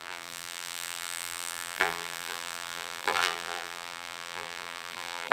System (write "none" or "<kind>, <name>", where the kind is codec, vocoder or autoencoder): vocoder, BigVGAN v2